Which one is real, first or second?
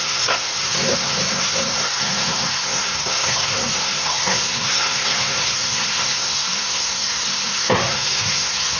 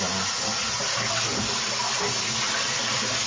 second